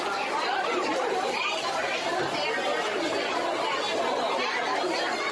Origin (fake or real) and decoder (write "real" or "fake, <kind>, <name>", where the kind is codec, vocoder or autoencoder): real